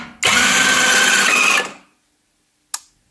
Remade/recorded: recorded